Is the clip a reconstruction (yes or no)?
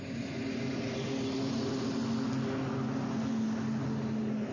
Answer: no